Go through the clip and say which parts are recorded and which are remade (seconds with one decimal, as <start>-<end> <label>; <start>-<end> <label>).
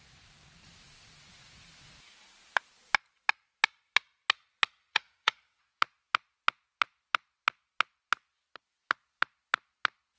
0.0-4.8 recorded; 4.8-5.8 remade; 5.8-10.2 recorded